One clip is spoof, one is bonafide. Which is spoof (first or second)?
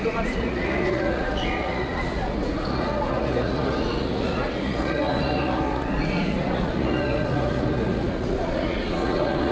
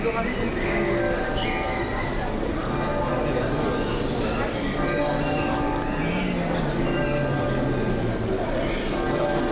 first